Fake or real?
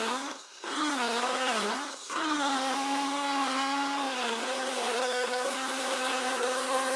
fake